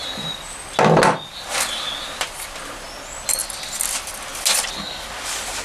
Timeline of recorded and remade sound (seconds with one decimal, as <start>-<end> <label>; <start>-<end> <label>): 0.0-5.6 recorded